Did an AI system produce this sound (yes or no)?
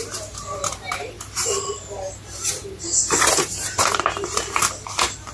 yes